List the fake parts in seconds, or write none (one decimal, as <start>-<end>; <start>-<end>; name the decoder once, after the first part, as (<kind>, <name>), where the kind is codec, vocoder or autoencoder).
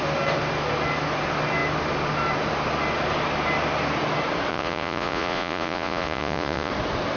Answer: 4.5-6.7 (vocoder, Vocos)